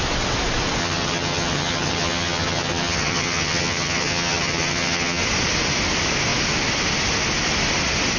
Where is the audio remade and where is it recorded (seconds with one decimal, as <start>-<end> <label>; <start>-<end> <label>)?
0.0-0.8 recorded; 0.8-5.2 remade; 5.2-8.2 recorded